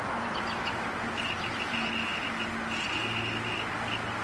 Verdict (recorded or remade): recorded